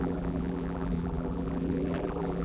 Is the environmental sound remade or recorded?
remade